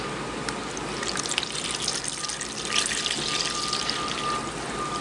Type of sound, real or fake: real